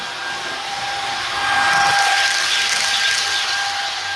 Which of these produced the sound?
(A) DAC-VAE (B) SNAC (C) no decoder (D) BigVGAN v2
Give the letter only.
C